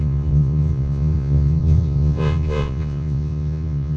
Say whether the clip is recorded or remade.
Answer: remade